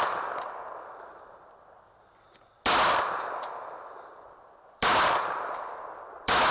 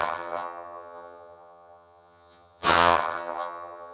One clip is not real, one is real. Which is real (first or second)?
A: first